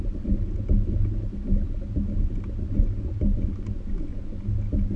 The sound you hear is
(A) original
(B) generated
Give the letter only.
A